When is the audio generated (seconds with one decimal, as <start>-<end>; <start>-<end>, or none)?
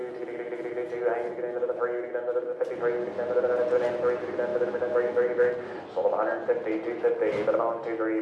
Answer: 4.5-5.5